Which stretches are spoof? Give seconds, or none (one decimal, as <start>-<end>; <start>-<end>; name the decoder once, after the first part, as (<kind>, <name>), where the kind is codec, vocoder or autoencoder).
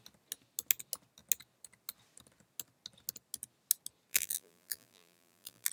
4.1-5.7 (vocoder, BigVGAN v2)